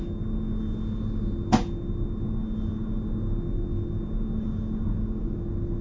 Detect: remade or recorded recorded